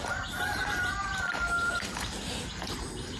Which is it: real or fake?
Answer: real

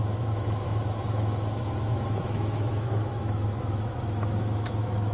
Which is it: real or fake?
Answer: fake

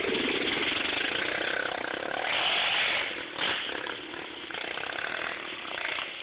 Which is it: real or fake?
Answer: real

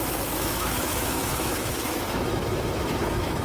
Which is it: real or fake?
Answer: fake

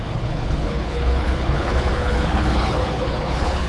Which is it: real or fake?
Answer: fake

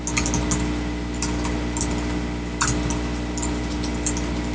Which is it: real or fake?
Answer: real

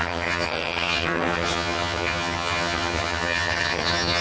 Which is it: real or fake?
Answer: fake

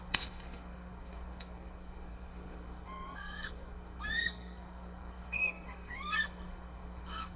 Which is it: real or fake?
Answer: fake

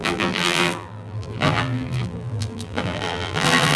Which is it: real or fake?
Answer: fake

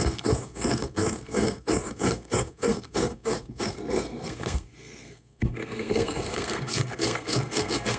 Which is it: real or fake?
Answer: fake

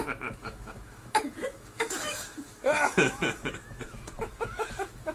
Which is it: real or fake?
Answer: fake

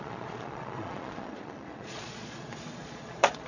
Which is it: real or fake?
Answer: fake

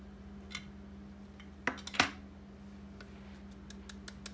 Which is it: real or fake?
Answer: real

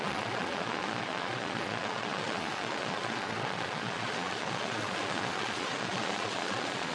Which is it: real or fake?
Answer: fake